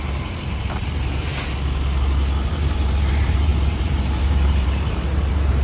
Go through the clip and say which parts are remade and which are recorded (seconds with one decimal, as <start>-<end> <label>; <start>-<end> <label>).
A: 0.0-1.3 remade; 1.3-2.5 recorded; 2.5-5.6 remade